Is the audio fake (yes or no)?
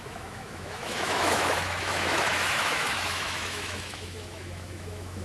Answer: yes